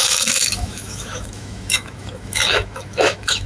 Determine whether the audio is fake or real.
fake